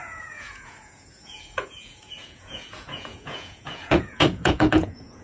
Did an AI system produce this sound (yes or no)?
yes